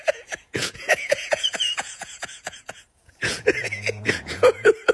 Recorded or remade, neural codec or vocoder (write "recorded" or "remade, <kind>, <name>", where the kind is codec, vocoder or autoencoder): remade, vocoder, Vocos